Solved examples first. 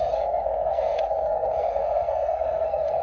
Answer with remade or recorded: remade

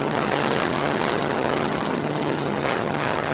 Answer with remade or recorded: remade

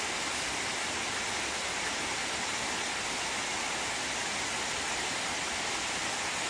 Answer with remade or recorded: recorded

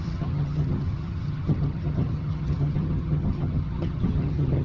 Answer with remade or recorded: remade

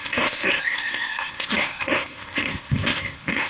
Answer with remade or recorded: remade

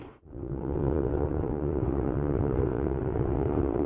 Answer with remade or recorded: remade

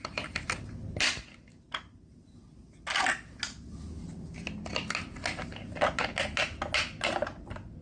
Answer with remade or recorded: recorded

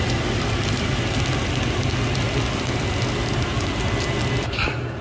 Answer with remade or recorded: recorded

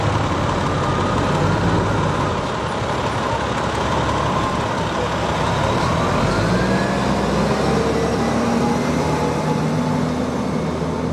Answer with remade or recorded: recorded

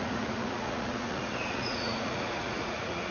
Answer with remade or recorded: remade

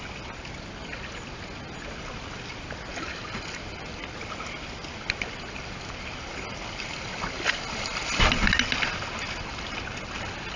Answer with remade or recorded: recorded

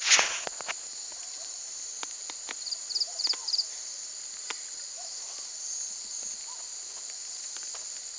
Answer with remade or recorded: recorded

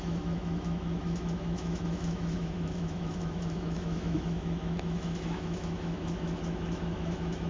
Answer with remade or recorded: remade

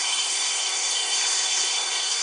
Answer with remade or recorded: remade